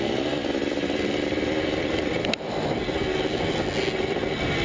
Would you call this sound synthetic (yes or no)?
no